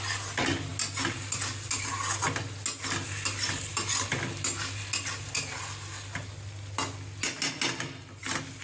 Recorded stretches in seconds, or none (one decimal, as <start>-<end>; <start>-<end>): 0.0-8.6